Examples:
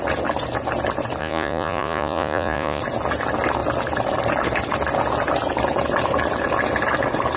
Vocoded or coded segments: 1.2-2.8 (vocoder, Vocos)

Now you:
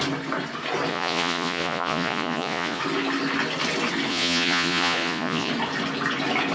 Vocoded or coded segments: 0.9-2.8 (vocoder, Vocos); 4.1-5.5

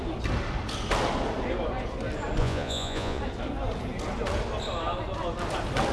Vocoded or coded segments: 2.4-3.2 (vocoder, Vocos)

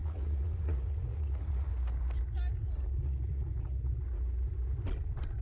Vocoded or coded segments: 0.0-1.7 (vocoder, Vocos); 3.0-3.9

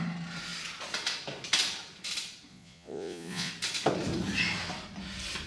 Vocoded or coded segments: 2.5-3.5 (vocoder, Vocos)

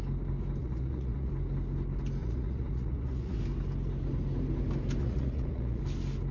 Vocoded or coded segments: 0.6-1.3 (vocoder, Vocos); 2.2-3.4; 5.0-5.8

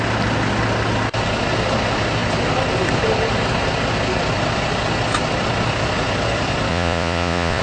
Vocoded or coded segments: 6.7-7.6 (vocoder, Vocos)